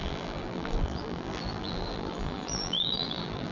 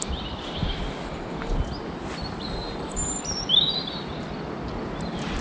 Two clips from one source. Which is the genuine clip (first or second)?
second